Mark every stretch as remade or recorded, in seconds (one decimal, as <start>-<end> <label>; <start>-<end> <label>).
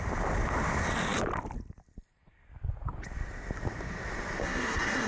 0.0-4.4 recorded; 4.4-5.1 remade